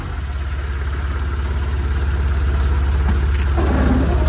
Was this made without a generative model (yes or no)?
yes